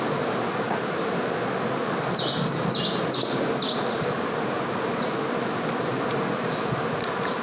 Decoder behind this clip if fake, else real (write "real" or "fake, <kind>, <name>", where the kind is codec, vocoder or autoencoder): real